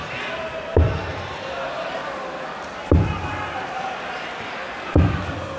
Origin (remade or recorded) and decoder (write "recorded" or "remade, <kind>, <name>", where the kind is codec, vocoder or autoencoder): recorded